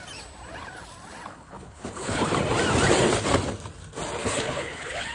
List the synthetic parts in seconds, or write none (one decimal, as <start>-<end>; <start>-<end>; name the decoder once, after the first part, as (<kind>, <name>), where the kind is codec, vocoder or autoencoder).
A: 1.3-2.3 (codec, HILCodec); 4.2-5.1